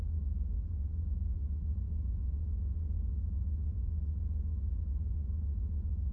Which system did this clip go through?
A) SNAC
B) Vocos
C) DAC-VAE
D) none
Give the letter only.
B